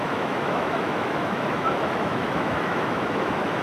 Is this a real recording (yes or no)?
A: no